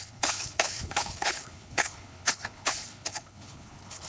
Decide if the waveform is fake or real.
fake